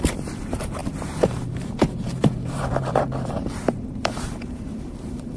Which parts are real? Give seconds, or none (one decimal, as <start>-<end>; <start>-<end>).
none